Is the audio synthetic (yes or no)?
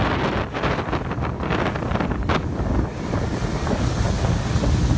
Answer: no